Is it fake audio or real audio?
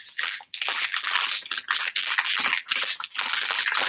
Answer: fake